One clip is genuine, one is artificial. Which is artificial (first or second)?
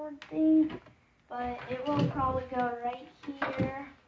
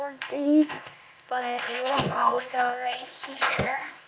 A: second